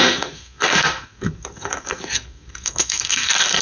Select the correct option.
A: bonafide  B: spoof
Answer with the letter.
B